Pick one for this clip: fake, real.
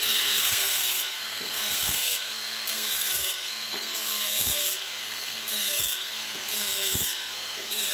fake